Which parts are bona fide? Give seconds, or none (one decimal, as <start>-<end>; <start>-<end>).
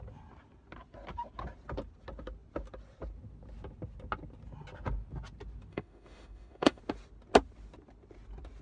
0.0-5.7; 6.8-8.6